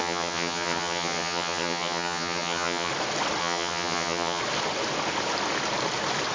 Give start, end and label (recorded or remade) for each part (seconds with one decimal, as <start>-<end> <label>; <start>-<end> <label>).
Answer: 0.0-2.9 remade; 2.9-3.4 recorded; 3.4-4.4 remade; 4.4-6.3 recorded